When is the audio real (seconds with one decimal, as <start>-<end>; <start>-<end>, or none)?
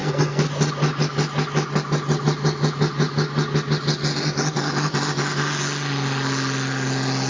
0.5-7.3